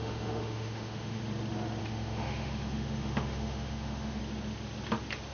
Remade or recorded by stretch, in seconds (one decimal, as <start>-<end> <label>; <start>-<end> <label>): 0.0-1.2 remade; 1.2-1.8 recorded; 1.8-4.2 remade; 4.2-5.3 recorded